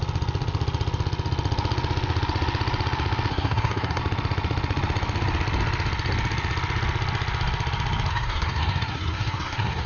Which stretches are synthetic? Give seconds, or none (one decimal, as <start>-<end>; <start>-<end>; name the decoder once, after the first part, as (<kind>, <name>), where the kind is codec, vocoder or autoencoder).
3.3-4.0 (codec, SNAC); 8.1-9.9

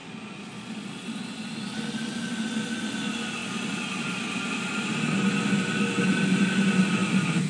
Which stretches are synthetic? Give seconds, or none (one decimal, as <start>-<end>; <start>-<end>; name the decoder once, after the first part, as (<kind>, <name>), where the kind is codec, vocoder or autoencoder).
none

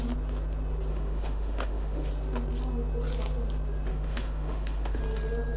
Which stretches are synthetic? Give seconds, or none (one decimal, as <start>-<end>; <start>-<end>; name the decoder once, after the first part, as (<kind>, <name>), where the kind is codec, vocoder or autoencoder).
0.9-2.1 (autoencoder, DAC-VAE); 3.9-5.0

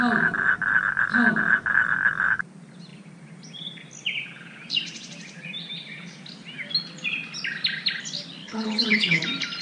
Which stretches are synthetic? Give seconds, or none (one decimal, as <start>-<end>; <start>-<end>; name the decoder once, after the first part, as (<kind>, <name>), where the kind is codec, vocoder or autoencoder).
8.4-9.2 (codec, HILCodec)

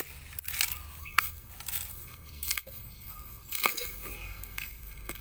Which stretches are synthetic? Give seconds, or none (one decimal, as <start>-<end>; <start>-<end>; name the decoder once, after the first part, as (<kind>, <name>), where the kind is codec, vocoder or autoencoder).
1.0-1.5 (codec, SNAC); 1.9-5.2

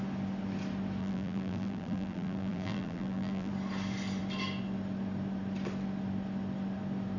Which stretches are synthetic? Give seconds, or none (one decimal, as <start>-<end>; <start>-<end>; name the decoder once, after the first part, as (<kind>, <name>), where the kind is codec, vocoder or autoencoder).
1.0-3.5 (vocoder, BigVGAN v2)

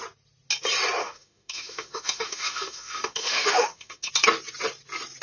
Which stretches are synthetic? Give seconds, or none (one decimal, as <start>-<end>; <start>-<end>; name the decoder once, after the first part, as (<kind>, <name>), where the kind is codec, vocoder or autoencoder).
1.0-4.1 (autoencoder, DAC-VAE)

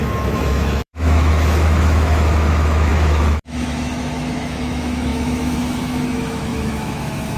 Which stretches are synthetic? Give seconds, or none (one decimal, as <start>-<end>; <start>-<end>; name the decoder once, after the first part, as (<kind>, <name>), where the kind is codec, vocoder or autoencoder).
0.0-7.4 (autoencoder, DAC-VAE)